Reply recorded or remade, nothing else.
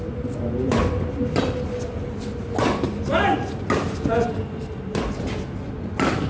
recorded